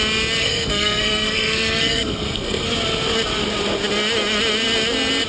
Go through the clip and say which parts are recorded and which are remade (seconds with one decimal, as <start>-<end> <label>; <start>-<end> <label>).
0.0-0.4 recorded; 0.4-2.7 remade; 2.7-5.3 recorded